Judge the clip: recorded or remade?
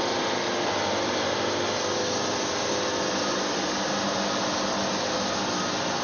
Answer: recorded